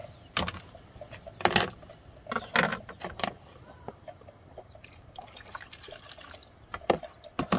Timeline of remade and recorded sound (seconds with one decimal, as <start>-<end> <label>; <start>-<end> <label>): 0.0-2.7 recorded; 2.7-6.0 remade; 6.0-6.4 recorded; 6.4-7.1 remade; 7.1-7.6 recorded